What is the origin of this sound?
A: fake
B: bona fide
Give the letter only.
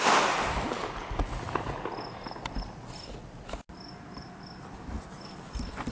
B